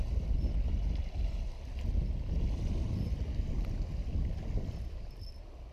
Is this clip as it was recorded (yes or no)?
yes